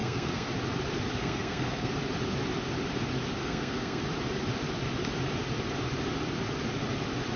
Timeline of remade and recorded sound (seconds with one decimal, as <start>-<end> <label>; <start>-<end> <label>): 0.0-0.5 remade; 0.5-1.2 recorded; 1.2-1.9 remade; 1.9-3.4 recorded; 3.4-4.0 remade; 4.0-7.4 recorded